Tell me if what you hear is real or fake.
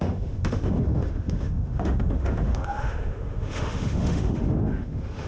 fake